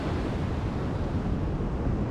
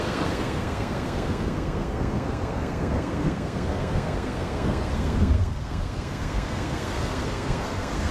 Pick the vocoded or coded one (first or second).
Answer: second